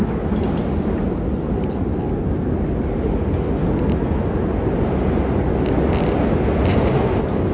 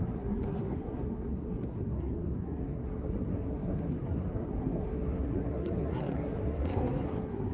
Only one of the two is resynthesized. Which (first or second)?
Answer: second